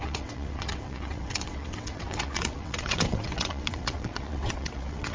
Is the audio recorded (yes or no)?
no